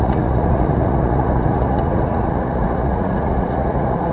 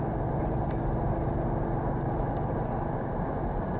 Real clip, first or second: second